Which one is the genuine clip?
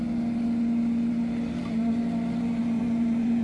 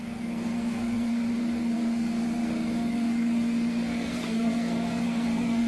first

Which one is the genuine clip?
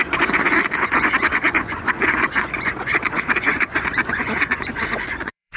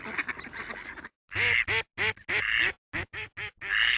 second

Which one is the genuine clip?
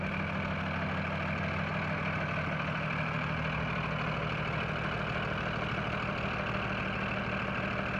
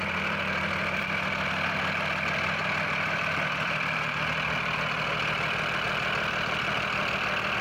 first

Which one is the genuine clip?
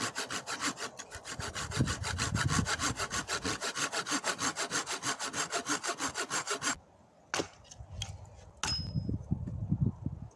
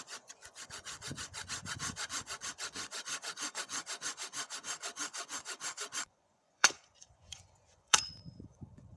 first